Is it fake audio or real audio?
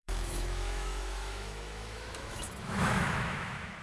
fake